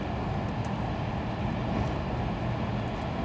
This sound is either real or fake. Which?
real